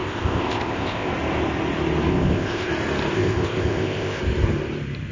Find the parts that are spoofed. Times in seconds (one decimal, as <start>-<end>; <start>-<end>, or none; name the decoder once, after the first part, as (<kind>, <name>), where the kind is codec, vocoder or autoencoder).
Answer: 0.0-1.1 (codec, ZipCodec); 2.1-2.7; 3.1-4.2